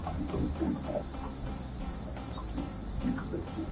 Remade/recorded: recorded